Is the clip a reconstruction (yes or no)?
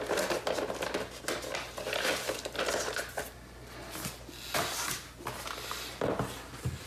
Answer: no